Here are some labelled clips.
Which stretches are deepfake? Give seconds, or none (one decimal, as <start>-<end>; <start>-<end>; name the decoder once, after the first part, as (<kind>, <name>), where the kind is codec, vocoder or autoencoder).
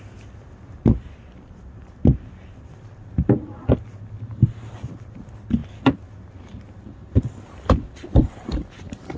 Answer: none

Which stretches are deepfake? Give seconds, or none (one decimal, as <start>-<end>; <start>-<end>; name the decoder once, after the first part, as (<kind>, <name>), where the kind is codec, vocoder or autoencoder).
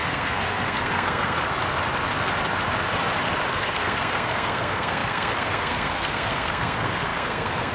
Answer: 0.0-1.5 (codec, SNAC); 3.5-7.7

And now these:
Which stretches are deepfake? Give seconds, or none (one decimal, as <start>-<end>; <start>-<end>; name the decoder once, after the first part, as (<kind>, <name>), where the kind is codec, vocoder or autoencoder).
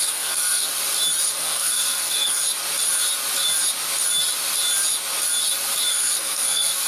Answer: 0.0-0.7 (codec, SNAC); 1.3-2.4; 5.9-6.9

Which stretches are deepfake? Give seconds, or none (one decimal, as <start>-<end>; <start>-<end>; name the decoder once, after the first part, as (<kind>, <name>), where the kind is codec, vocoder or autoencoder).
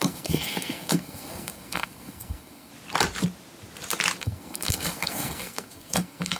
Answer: 0.0-2.7 (codec, SNAC); 4.2-6.4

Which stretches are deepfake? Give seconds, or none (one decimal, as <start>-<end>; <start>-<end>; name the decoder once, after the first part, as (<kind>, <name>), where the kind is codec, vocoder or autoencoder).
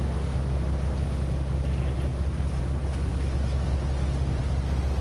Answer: none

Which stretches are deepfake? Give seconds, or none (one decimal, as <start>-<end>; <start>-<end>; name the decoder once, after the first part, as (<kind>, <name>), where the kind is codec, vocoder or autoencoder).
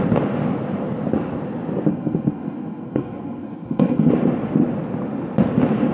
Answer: 1.9-4.1 (codec, SNAC)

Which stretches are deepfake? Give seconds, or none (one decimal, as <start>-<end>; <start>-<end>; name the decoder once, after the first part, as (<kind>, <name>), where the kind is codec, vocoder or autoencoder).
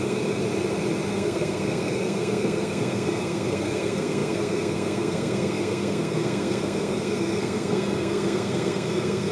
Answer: 0.0-0.4 (codec, SNAC); 1.1-9.3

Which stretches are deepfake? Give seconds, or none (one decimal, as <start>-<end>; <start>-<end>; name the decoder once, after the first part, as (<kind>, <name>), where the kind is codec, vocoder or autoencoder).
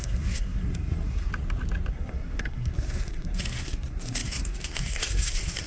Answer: 0.0-1.3 (codec, SNAC); 1.9-5.7